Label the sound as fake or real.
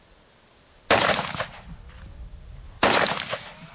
real